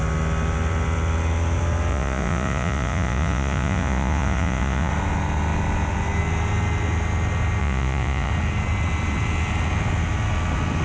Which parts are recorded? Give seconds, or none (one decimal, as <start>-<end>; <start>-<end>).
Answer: 0.0-1.9; 4.9-7.6; 8.3-10.8